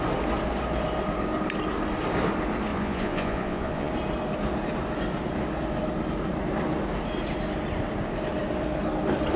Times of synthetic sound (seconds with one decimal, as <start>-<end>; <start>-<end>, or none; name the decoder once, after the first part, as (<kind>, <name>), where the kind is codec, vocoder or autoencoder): 2.7-3.9 (vocoder, Vocos)